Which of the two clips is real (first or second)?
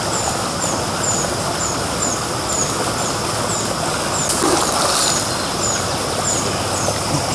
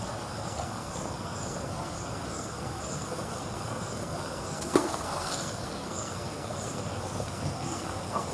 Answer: first